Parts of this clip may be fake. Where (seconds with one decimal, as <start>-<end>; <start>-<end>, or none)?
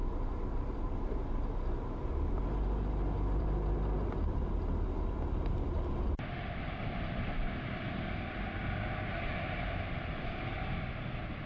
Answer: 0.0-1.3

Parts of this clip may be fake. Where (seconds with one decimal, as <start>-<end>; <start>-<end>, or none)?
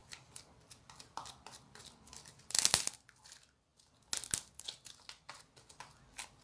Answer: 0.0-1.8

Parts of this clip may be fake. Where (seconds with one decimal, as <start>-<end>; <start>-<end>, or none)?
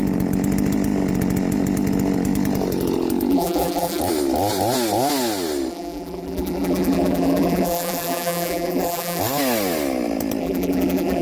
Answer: 3.3-4.0; 5.7-9.2; 10.4-11.2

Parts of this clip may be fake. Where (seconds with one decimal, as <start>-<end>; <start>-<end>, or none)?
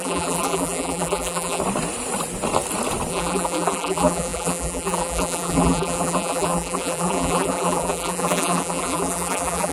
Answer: 0.0-1.6; 3.1-9.7